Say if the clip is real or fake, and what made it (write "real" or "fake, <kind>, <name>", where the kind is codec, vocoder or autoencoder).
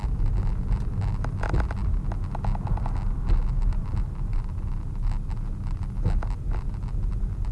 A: real